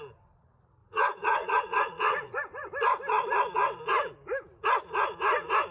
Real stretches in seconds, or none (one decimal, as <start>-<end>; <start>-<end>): 0.0-0.8; 2.7-5.7